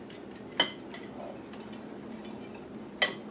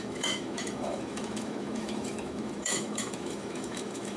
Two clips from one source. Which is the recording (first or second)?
first